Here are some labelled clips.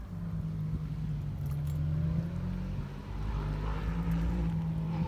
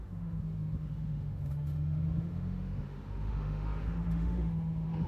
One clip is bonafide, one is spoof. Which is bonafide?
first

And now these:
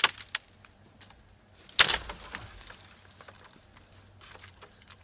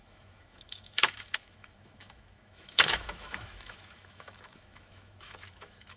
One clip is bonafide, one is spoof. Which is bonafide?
first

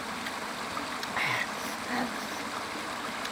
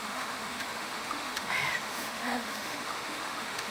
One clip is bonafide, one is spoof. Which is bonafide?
first